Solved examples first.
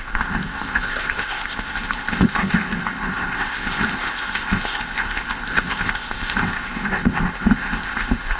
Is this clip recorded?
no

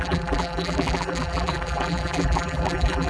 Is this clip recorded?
no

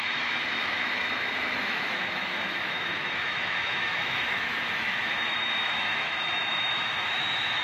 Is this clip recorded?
no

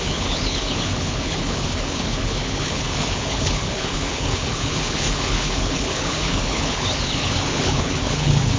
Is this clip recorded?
no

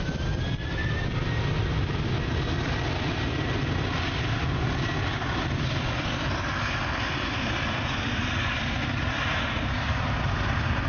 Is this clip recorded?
yes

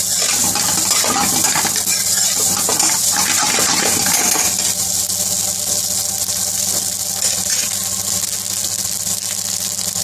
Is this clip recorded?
yes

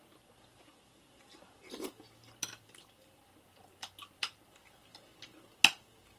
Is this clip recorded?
yes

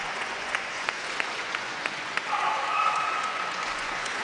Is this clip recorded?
no